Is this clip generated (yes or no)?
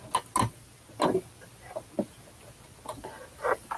no